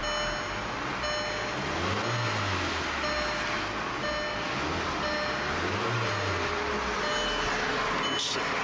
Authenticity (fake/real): real